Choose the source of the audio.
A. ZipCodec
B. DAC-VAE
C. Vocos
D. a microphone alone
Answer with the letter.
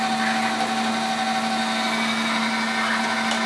D